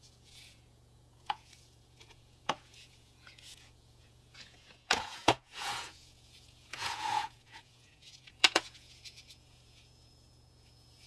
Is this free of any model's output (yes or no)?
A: no